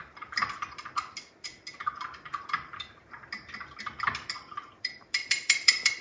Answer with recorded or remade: recorded